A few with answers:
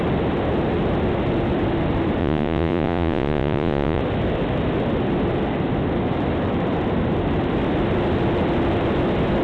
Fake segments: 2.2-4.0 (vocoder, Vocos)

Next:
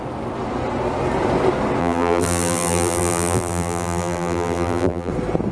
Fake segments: 1.8-5.1 (vocoder, BigVGAN v2)

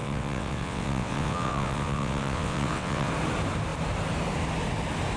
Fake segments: 0.0-3.1 (vocoder, WaveNeXt)

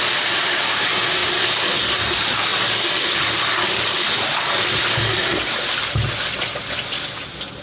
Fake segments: none

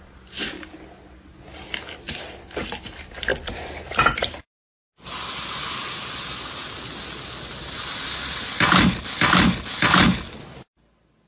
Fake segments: none

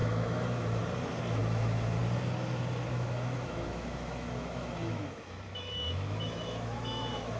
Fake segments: 0.0-0.8 (autoencoder, DAC-VAE); 1.4-2.0; 2.9-7.4

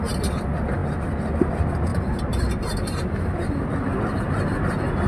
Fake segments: 1.9-4.2 (vocoder, BigVGAN v2)